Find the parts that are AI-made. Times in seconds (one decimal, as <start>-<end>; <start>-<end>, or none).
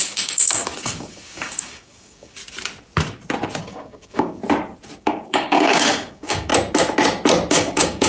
0.0-2.4; 3.6-4.4; 5.0-6.5; 7.5-8.1